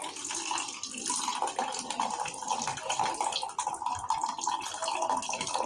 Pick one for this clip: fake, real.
real